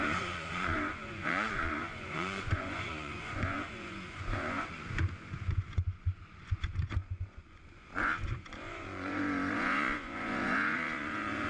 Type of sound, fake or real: fake